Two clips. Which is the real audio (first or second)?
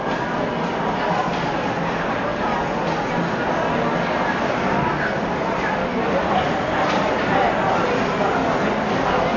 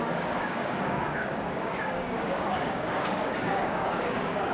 first